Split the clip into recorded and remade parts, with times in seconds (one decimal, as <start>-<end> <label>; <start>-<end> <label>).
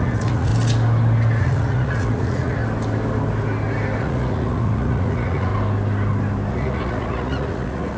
0.0-0.5 remade; 0.5-1.4 recorded; 1.4-2.6 remade; 2.6-4.0 recorded; 4.0-5.5 remade; 5.5-6.5 recorded; 6.5-8.0 remade